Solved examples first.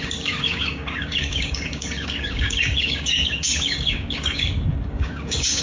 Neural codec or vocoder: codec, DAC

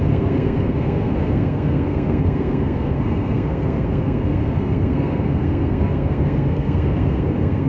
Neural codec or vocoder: codec, SNAC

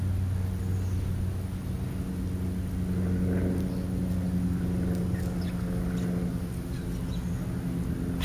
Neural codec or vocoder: none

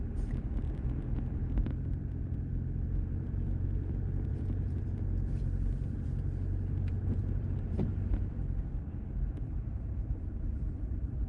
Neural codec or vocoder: vocoder, BigVGAN v2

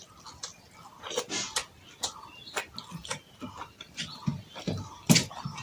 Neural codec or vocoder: none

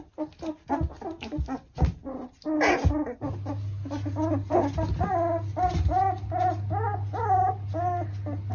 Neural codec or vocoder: none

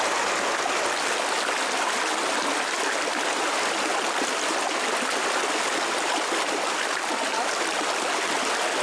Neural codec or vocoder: none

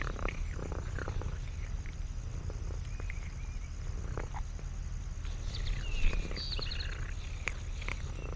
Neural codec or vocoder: none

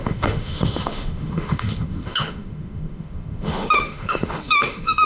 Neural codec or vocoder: autoencoder, DAC-VAE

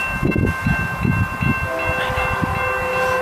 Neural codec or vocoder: none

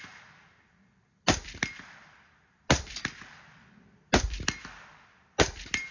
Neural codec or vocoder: none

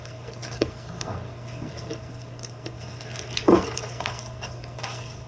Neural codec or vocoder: codec, SNAC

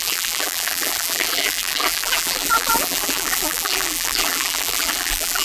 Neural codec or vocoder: vocoder, BigVGAN v2